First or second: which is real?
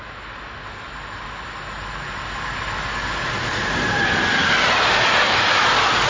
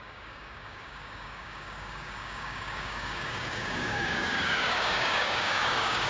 first